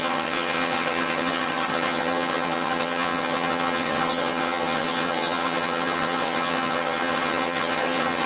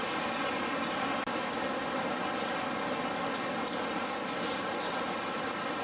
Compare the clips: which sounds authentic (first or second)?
second